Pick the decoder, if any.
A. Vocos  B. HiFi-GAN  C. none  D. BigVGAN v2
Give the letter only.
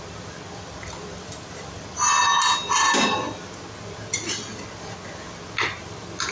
C